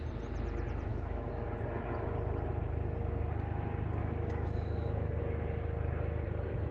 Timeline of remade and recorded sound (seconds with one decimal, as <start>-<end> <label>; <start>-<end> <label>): 0.0-0.9 recorded; 0.9-1.5 remade; 1.5-4.0 recorded; 4.0-5.2 remade; 5.2-6.7 recorded